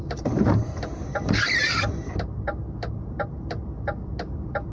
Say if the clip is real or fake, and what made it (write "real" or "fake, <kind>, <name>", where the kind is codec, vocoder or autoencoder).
fake, vocoder, BigVGAN v2